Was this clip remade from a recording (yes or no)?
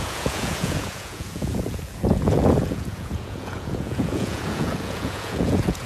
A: yes